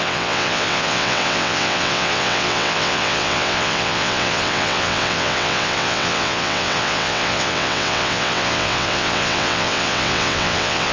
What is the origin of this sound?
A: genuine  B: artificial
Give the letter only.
B